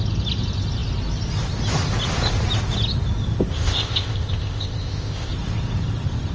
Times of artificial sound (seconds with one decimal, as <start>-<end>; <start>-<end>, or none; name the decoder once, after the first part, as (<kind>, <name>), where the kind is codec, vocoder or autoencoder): 3.5-5.3 (codec, ZipCodec)